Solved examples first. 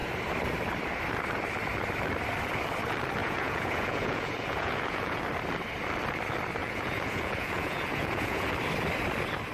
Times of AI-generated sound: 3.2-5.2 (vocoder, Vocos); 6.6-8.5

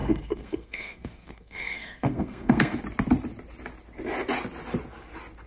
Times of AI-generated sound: 0.0-2.8 (codec, SNAC)

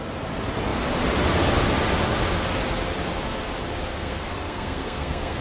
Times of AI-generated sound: 3.9-5.4 (codec, SNAC)

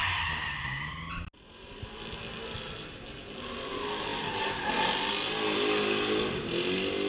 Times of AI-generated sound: none

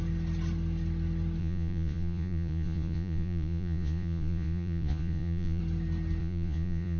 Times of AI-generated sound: 1.4-5.6 (vocoder, Vocos); 6.2-7.0

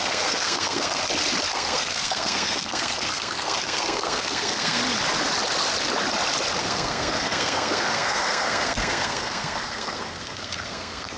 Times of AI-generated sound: 0.0-1.0 (codec, SNAC); 1.5-4.8; 6.6-11.2

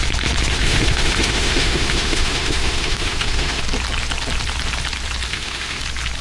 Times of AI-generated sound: 0.5-3.6 (autoencoder, DAC-VAE); 5.3-5.8